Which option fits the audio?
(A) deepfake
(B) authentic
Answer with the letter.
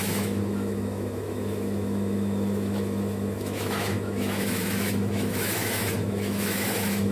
A